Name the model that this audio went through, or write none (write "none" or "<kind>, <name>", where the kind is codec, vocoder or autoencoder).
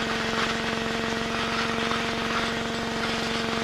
none